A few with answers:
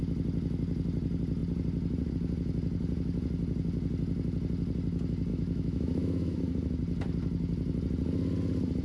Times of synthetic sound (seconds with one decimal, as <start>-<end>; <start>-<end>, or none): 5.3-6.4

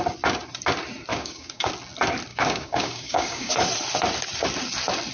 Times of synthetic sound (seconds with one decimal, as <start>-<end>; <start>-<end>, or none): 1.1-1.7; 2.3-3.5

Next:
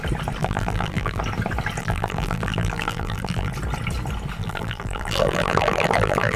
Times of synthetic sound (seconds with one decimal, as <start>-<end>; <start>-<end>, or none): 0.4-1.2; 1.8-3.5; 4.4-6.4

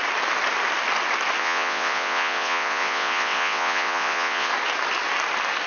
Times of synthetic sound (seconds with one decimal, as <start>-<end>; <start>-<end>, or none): 1.4-4.5